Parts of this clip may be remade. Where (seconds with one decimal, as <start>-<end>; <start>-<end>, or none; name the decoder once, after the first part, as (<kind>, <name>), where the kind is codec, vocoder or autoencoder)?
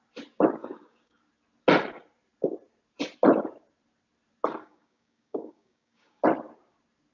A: 0.6-1.2 (codec, DAC); 4.6-6.2